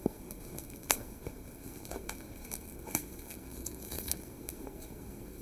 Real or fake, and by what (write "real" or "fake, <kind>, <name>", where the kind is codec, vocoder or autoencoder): fake, codec, SNAC